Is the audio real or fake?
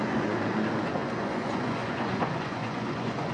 fake